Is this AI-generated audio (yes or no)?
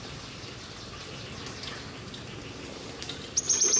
no